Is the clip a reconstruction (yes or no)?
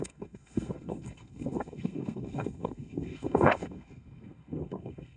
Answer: yes